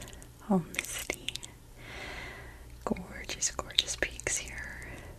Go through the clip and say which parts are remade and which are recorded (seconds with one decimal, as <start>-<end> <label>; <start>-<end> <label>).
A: 0.0-1.0 recorded; 1.0-2.4 remade; 2.4-3.0 recorded; 3.0-3.9 remade; 3.9-5.2 recorded